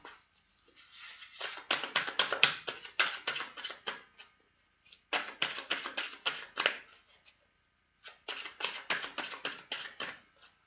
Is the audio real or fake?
real